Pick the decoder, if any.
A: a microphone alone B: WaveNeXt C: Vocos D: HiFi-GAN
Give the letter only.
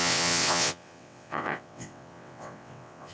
B